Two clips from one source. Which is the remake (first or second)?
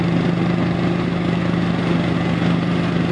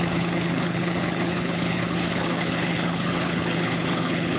second